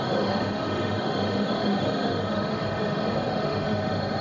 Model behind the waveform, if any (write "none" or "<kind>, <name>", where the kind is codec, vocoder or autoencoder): autoencoder, DAC-VAE